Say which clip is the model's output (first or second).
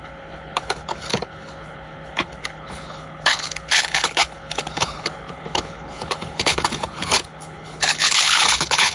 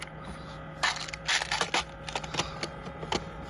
first